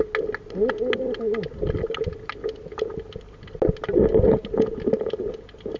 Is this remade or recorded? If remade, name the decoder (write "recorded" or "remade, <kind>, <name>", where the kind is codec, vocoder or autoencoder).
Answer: recorded